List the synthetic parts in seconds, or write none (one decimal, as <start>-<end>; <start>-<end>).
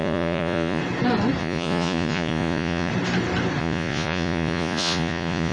0.0-0.8; 1.4-2.9; 3.6-5.5